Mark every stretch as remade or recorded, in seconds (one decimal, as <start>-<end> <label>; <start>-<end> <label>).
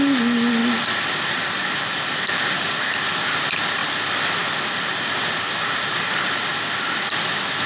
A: 0.0-0.6 remade; 0.6-1.6 recorded; 1.6-3.8 remade; 3.8-5.3 recorded; 5.3-7.7 remade